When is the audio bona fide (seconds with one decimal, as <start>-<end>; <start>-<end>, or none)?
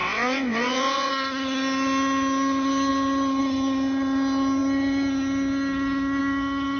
1.1-6.8